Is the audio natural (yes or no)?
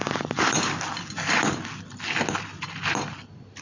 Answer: yes